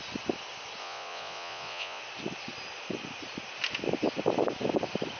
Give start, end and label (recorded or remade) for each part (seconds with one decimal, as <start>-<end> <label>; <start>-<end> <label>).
0.0-0.8 recorded; 0.8-2.0 remade; 2.0-5.2 recorded